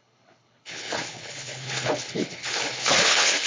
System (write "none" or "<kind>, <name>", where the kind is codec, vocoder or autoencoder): codec, HILCodec